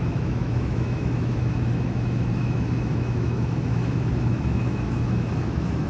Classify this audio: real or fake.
fake